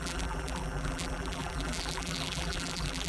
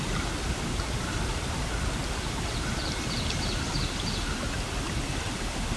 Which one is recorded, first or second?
second